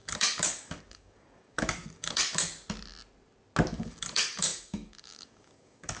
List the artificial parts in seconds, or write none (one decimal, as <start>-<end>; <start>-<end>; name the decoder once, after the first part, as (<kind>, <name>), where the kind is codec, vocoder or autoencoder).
0.0-2.5 (codec, DAC); 3.7-6.0

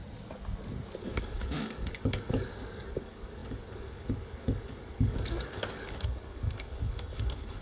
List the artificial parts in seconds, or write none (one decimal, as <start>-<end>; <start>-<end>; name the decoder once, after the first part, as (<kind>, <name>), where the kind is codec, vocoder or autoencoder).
1.0-7.6 (codec, DAC)

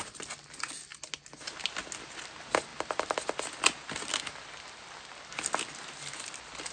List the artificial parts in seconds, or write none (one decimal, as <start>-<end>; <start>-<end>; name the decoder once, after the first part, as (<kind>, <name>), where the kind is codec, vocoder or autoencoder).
none

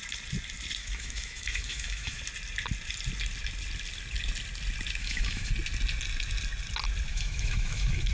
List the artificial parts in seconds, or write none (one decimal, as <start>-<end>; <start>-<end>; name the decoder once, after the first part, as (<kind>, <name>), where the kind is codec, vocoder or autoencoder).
0.8-2.2 (autoencoder, DAC-VAE); 5.0-5.5; 7.1-8.1

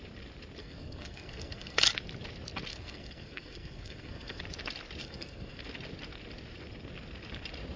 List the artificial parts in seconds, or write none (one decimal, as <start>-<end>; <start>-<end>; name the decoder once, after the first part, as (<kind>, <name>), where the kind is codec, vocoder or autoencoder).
0.6-1.8 (codec, SNAC); 2.7-4.4; 5.0-5.6

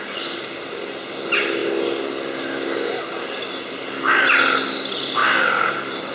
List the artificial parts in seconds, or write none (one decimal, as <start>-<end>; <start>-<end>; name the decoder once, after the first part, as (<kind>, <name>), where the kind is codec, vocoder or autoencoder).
5.2-6.1 (vocoder, BigVGAN v2)

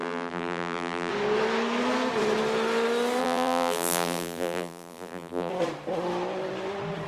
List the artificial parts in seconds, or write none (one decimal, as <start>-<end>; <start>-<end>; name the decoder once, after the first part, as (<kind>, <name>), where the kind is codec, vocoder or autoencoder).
0.0-1.1 (vocoder, BigVGAN v2); 3.2-5.5